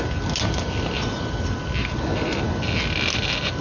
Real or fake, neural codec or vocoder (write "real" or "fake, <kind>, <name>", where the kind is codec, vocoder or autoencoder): real